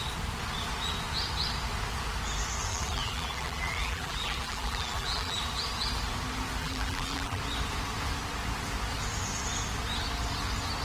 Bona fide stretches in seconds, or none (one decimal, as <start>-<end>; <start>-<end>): 0.0-2.7; 5.4-6.6; 7.4-10.8